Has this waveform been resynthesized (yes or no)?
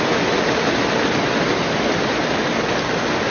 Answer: no